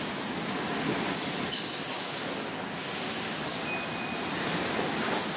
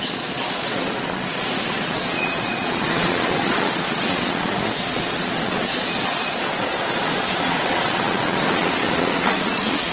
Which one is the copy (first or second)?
second